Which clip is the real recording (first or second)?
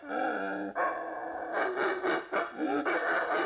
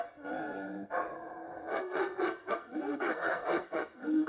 first